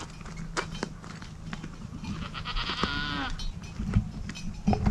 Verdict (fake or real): real